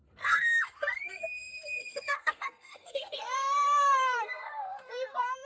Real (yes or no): no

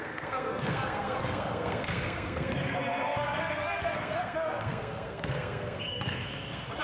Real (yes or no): no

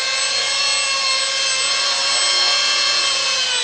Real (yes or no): yes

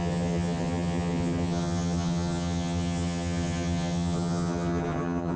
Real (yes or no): no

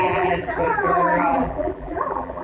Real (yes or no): no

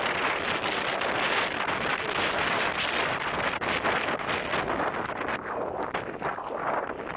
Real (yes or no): yes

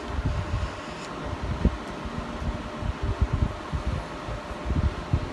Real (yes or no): yes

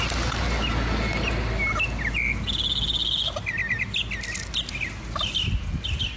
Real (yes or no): yes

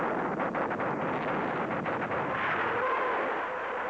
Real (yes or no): yes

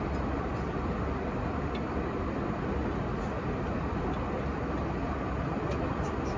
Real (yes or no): yes